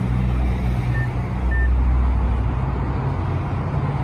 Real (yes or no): yes